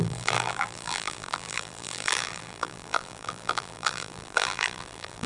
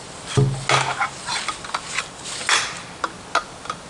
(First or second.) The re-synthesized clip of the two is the first